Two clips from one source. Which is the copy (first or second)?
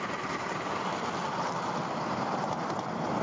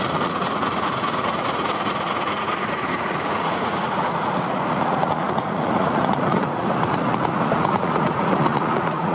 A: second